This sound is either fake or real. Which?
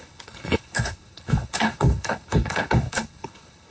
fake